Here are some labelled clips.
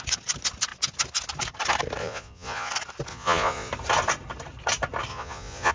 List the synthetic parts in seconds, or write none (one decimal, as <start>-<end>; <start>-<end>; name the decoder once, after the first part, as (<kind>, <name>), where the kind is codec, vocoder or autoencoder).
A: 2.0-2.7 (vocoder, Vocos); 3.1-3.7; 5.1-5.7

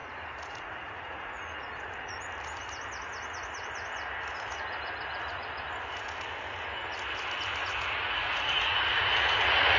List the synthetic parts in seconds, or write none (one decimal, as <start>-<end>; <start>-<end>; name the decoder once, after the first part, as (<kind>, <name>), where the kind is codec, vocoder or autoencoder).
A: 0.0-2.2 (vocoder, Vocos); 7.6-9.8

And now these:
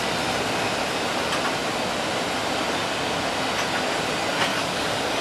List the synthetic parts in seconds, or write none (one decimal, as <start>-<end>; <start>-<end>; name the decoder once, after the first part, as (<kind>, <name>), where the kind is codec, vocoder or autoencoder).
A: 4.5-5.2 (codec, DAC)